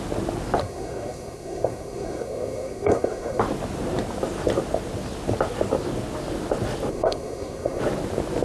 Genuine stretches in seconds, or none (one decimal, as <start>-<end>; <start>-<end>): 0.0-0.6; 3.4-6.9; 7.8-8.4